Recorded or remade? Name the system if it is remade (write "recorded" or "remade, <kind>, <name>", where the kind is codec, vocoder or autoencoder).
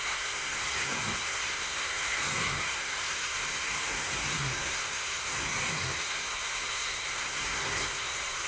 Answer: remade, codec, SNAC